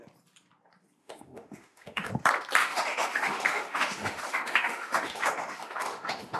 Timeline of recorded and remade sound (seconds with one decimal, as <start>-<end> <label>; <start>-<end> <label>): 0.0-1.0 recorded; 1.0-2.1 remade; 2.1-2.6 recorded; 2.6-6.4 remade

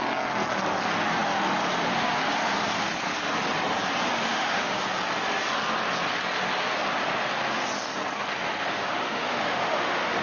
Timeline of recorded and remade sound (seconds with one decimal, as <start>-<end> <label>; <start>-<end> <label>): 0.0-4.2 recorded; 4.2-4.7 remade; 4.7-8.7 recorded; 8.7-10.2 remade

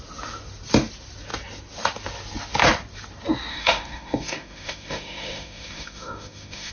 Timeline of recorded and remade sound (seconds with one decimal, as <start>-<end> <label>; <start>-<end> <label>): 0.0-3.5 recorded; 3.5-6.7 remade

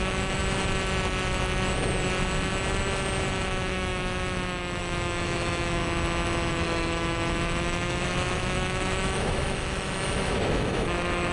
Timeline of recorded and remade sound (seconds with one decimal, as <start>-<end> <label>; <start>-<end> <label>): 0.0-0.4 remade; 0.4-3.4 recorded; 3.4-5.8 remade; 5.8-6.5 recorded; 6.5-11.3 remade

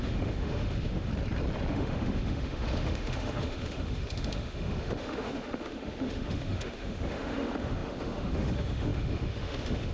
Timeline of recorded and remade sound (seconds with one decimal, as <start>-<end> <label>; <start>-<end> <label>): 0.0-1.1 remade; 1.1-1.7 recorded; 1.7-9.9 remade